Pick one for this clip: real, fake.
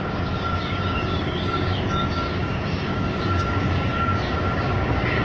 fake